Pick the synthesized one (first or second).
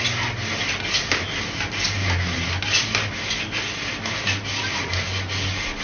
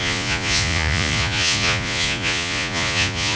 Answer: second